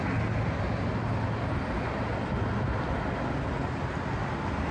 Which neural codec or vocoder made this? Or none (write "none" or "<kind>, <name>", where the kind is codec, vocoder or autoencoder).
none